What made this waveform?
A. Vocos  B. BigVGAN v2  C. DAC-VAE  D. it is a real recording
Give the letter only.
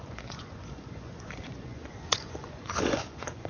A